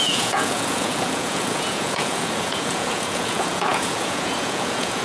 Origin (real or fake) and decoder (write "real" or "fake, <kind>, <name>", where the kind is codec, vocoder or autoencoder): fake, vocoder, Vocos